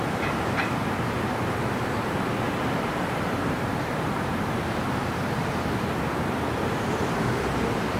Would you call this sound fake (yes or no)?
yes